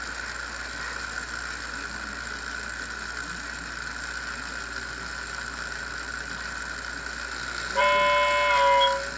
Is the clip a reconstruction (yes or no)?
no